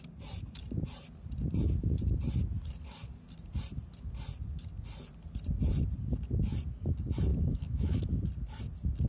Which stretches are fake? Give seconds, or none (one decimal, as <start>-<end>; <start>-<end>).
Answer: 7.3-8.1